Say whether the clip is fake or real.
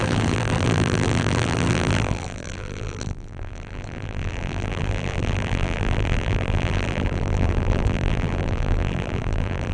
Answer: fake